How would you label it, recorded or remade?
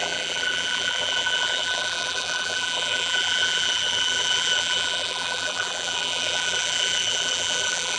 remade